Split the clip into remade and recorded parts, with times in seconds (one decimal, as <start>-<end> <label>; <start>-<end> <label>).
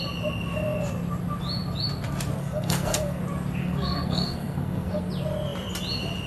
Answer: 0.0-2.4 recorded; 2.4-3.2 remade; 3.2-3.6 recorded; 3.6-5.1 remade; 5.1-6.3 recorded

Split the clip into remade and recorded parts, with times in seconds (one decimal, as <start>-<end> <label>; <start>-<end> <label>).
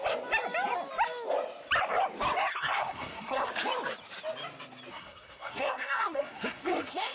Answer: 0.0-2.5 recorded; 2.5-3.5 remade; 3.5-4.9 recorded; 4.9-7.1 remade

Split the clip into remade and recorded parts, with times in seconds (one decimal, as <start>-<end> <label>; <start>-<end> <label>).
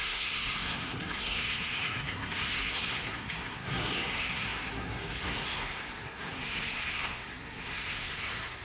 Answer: 0.0-8.6 remade